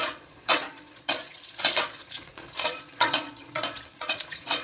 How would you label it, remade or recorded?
remade